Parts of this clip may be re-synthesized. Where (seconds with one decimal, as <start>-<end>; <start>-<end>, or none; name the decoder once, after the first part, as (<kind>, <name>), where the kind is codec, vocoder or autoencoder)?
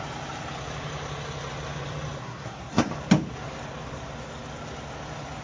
2.2-2.9 (codec, SNAC)